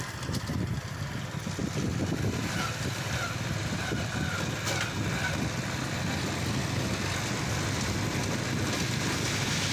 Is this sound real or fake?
real